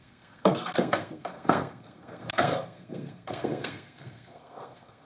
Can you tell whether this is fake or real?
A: fake